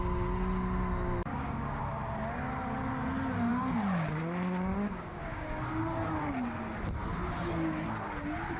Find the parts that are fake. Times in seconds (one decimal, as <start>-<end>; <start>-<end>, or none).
1.3-1.8; 4.7-5.6

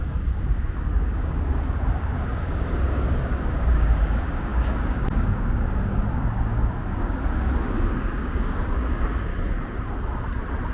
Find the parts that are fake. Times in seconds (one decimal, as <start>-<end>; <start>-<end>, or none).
0.0-9.3

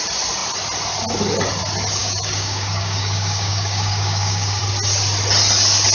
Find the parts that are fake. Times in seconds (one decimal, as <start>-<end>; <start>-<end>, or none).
2.0-4.6

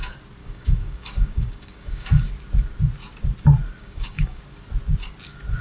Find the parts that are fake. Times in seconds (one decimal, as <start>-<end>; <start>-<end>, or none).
0.4-2.3; 3.8-4.4

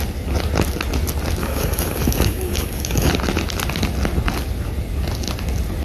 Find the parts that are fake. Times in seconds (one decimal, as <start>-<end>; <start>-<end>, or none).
1.4-3.1